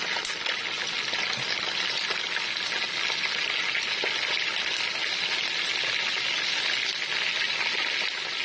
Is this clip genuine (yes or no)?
yes